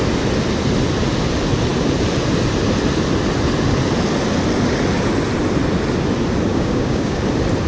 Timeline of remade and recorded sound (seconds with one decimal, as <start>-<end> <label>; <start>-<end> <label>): 0.0-6.5 recorded; 6.5-7.2 remade; 7.2-7.7 recorded